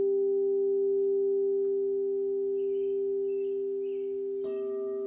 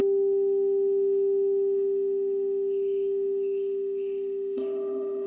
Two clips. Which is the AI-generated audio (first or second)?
second